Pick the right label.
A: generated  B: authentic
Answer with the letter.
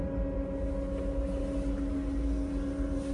B